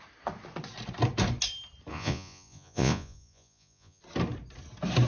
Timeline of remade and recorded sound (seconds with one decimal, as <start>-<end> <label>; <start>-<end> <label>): 0.0-1.9 recorded; 1.9-4.0 remade; 4.0-5.1 recorded